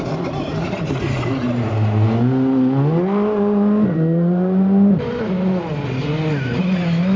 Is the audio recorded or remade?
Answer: recorded